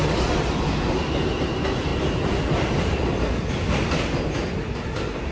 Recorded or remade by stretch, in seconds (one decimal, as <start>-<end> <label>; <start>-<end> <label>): 0.0-5.3 recorded